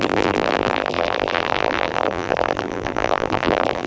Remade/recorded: remade